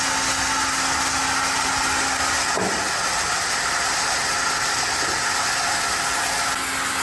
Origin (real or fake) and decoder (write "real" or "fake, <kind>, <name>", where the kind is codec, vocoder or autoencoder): real